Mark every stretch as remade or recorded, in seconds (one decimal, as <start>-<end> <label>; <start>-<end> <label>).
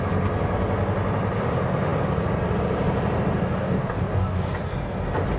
0.0-3.6 recorded; 3.6-4.4 remade; 4.4-5.4 recorded